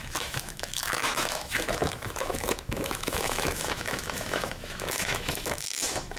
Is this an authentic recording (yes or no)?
no